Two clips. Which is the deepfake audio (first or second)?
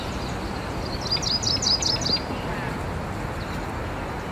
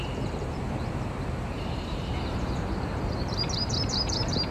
second